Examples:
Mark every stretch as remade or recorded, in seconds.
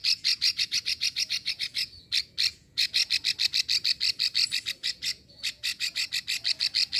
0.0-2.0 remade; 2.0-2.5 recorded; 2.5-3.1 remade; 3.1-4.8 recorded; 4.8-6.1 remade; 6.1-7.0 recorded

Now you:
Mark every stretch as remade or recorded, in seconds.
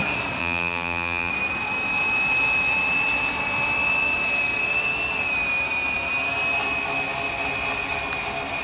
0.0-0.4 recorded; 0.4-1.3 remade; 1.3-8.6 recorded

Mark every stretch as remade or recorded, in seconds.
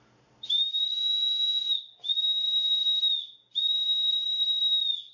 0.0-5.1 recorded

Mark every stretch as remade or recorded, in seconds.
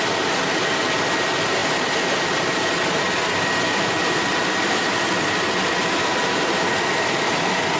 0.0-7.8 recorded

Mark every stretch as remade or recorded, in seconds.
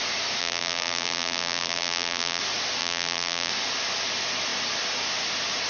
0.0-0.4 recorded; 0.4-2.4 remade; 2.4-2.8 recorded; 2.8-3.5 remade; 3.5-5.7 recorded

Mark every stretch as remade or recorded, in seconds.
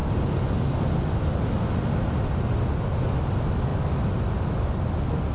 0.0-5.3 recorded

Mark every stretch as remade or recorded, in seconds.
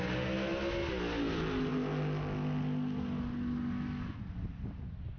0.0-5.2 recorded